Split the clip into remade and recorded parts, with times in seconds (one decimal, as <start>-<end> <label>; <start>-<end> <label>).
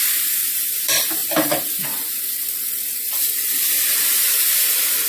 0.0-5.1 remade